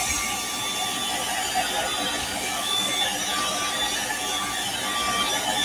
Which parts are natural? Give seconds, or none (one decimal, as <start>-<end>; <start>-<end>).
0.0-2.2; 2.9-5.6